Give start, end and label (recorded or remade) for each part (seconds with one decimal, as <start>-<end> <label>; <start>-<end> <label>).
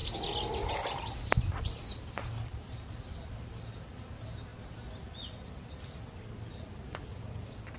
0.0-7.8 recorded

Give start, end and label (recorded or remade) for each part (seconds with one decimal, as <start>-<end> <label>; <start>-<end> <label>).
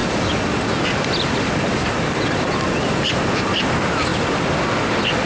0.0-5.3 recorded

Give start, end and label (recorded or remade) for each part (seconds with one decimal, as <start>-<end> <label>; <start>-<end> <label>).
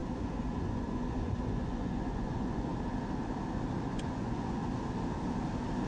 0.0-2.7 remade; 2.7-3.9 recorded; 3.9-4.6 remade; 4.6-5.9 recorded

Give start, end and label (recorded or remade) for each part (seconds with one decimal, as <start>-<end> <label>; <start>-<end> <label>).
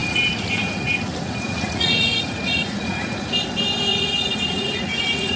0.0-3.2 remade; 3.2-3.9 recorded; 3.9-5.4 remade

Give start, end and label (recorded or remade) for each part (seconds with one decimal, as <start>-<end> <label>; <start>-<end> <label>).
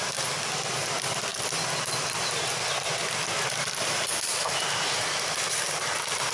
0.0-6.3 recorded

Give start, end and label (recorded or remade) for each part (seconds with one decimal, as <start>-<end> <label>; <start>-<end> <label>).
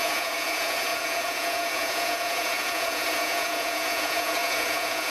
0.0-5.1 remade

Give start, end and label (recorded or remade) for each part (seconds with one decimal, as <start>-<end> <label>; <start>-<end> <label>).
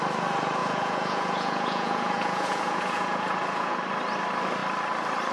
0.0-0.6 recorded; 0.6-3.8 remade; 3.8-5.3 recorded